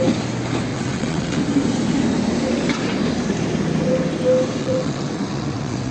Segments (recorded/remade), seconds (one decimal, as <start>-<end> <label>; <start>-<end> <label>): 0.0-0.7 recorded; 0.7-1.4 remade; 1.4-4.6 recorded; 4.6-5.9 remade

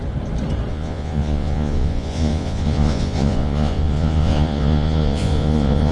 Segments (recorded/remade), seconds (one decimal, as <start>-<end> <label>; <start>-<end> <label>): 0.0-0.7 recorded; 0.7-5.9 remade

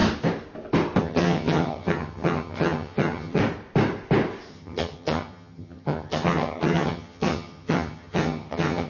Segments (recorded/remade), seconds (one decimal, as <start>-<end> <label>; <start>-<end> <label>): 0.0-1.0 recorded; 1.0-3.4 remade; 3.4-4.5 recorded; 4.5-8.9 remade

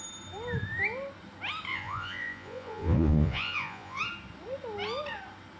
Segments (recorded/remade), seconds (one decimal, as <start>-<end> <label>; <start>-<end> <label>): 0.0-1.7 recorded; 1.7-4.0 remade; 4.0-5.6 recorded